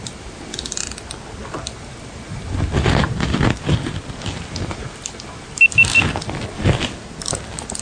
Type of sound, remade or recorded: recorded